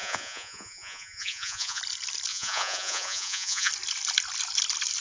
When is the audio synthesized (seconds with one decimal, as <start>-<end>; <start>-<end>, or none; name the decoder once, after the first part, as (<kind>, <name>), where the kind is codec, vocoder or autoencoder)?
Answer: 0.0-1.8 (vocoder, Vocos); 2.3-3.7